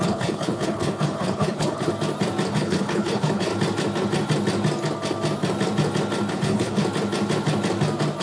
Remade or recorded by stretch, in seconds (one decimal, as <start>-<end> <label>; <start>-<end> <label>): 0.0-1.9 remade; 1.9-2.5 recorded; 2.5-3.5 remade; 3.5-6.3 recorded; 6.3-6.8 remade; 6.8-8.2 recorded